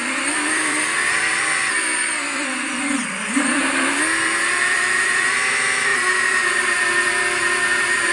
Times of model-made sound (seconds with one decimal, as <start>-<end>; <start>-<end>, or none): 0.0-3.6; 4.4-8.1